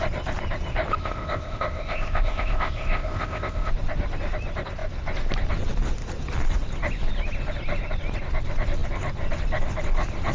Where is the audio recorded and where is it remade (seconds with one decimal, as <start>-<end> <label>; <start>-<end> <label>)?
0.0-1.0 recorded; 1.0-3.7 remade; 3.7-10.3 recorded